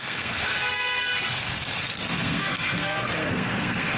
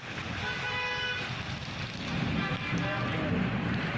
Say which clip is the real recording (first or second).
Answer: second